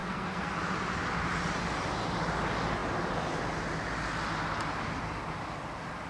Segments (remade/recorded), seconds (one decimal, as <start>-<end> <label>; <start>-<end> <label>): 0.0-0.5 remade; 0.5-6.1 recorded